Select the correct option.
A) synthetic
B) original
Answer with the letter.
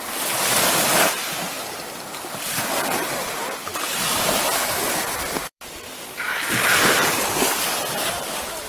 A